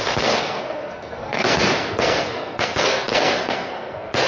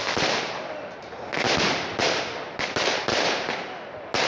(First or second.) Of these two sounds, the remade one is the first